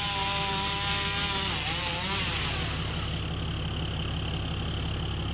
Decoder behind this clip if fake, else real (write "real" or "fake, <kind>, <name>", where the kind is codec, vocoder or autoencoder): real